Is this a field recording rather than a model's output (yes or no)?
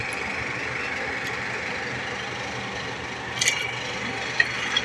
yes